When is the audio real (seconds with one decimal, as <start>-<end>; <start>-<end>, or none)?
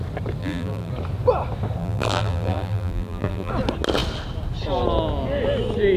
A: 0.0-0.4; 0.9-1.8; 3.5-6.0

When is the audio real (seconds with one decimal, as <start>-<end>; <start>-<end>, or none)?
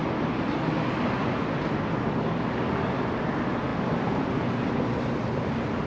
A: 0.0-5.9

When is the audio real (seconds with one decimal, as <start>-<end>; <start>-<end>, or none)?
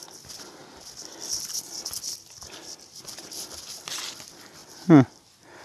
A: 0.0-0.6; 4.0-4.6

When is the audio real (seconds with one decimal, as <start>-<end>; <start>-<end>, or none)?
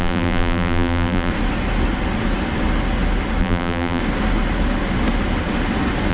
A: 1.3-3.4; 4.0-6.1